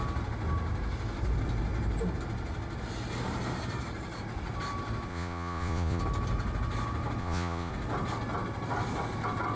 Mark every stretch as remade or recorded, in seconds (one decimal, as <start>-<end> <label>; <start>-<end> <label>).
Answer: 0.0-5.1 recorded; 5.1-6.0 remade; 6.0-7.2 recorded; 7.2-7.7 remade; 7.7-9.6 recorded